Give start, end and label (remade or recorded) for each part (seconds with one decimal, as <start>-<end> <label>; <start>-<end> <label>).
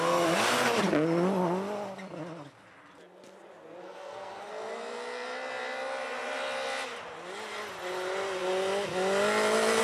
0.0-3.8 recorded; 3.8-4.5 remade; 4.5-9.8 recorded